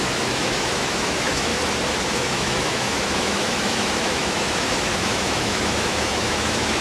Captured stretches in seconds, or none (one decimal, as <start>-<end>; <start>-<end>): 1.5-2.1